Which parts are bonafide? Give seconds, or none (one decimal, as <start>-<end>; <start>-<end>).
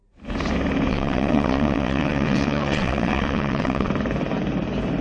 0.0-0.9; 3.9-5.0